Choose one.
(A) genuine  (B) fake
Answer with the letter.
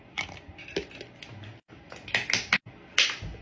A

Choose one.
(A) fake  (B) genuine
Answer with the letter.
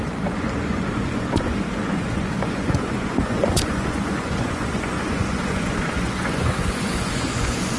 A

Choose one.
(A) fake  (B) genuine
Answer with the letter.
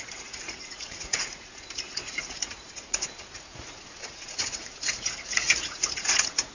A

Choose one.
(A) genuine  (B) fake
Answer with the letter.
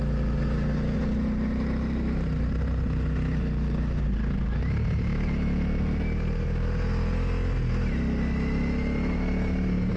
A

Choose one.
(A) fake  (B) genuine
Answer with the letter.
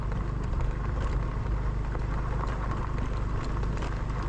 B